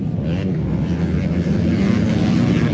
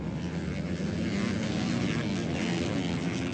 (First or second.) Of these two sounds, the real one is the second